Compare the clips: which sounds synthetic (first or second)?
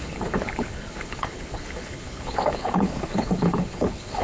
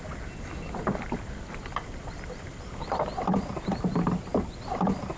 first